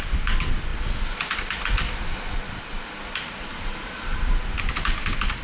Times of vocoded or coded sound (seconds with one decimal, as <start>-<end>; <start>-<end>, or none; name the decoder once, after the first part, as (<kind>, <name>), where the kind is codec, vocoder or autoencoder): 3.5-4.6 (vocoder, BigVGAN v2)